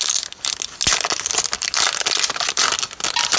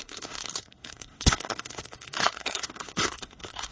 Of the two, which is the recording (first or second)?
first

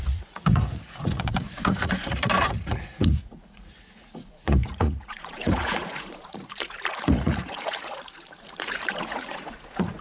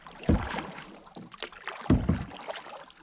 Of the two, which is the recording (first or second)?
second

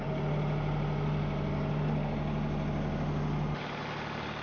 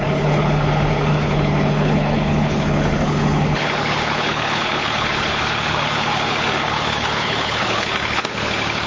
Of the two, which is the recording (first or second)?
first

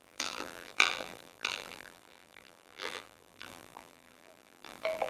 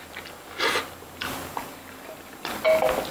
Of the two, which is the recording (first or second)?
second